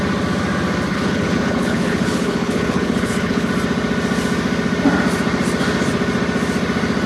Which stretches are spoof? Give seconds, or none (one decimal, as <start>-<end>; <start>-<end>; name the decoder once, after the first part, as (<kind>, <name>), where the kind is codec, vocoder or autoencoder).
0.9-3.5 (codec, HILCodec)

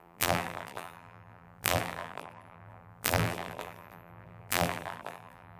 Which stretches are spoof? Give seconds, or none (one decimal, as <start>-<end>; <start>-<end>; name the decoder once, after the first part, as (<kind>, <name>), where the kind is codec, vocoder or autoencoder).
0.0-5.6 (vocoder, BigVGAN v2)

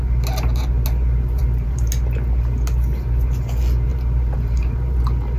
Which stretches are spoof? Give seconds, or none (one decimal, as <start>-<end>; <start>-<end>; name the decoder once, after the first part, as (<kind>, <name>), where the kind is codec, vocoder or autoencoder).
1.4-1.9 (vocoder, BigVGAN v2); 3.9-5.0

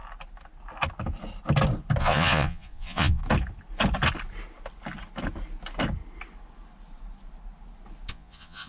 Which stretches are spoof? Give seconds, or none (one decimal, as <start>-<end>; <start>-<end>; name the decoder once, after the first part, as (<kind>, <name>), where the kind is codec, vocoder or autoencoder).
2.0-3.2 (vocoder, Vocos); 8.1-8.7

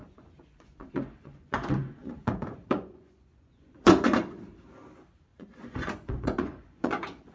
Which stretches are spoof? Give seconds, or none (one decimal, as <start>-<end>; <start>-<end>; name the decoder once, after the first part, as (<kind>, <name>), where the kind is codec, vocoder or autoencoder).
0.0-4.4 (vocoder, Vocos); 5.3-7.3